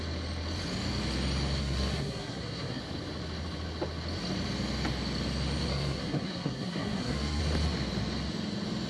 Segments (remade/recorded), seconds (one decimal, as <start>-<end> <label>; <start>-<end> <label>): 0.0-1.6 recorded; 1.6-2.8 remade; 2.8-5.7 recorded; 5.7-7.4 remade; 7.4-8.9 recorded